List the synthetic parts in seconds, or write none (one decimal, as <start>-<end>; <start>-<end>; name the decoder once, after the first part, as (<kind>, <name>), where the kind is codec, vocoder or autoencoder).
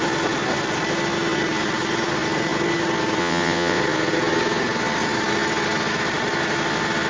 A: 3.2-3.8 (vocoder, WaveNeXt)